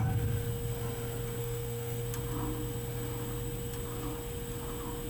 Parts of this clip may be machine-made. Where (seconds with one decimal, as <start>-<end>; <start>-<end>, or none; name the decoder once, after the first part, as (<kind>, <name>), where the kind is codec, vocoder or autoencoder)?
1.4-2.0 (codec, SNAC)